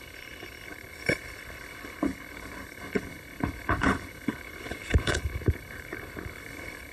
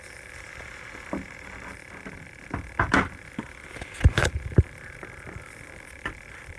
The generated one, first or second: first